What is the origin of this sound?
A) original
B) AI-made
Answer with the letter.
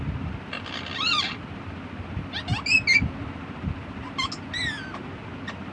A